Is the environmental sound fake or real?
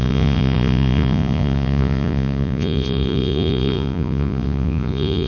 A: fake